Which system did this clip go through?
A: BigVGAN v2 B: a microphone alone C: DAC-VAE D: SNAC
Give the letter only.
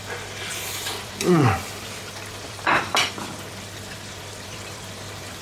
A